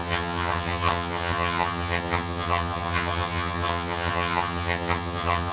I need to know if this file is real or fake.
fake